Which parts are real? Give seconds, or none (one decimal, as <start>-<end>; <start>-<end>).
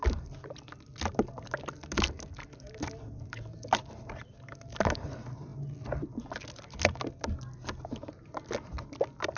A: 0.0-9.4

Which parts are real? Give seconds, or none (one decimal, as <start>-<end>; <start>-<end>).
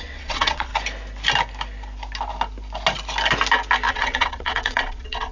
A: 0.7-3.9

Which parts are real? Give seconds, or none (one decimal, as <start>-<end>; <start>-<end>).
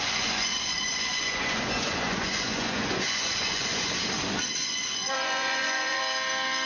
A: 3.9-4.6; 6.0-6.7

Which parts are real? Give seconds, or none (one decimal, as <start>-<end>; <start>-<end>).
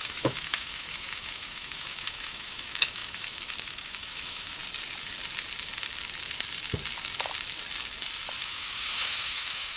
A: 4.6-8.4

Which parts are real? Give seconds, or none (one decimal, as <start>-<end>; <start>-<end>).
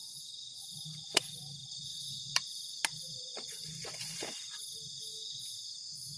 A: 1.2-1.6; 2.8-3.3; 4.5-6.2